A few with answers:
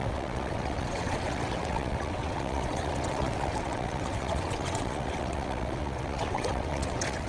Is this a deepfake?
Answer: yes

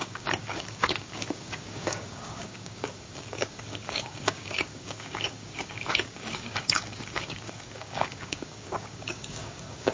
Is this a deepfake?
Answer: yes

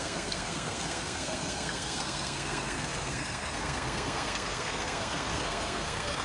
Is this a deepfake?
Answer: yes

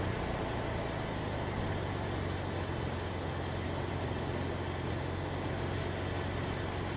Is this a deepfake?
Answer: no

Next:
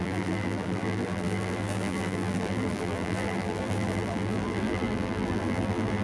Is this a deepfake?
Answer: yes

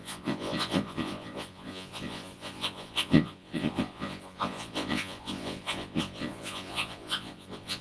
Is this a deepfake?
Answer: yes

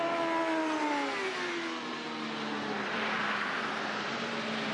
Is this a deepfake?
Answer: no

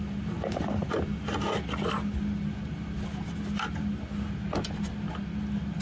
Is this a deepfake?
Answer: no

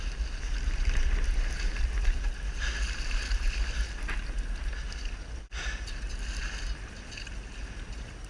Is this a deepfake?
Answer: no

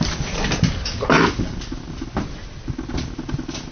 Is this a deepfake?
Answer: no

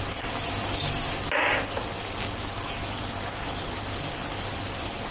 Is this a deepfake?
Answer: no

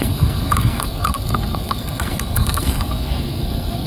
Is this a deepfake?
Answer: yes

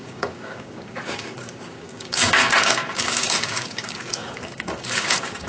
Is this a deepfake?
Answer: yes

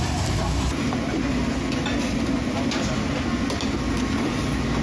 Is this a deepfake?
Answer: no